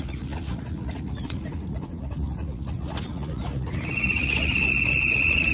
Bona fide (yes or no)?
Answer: no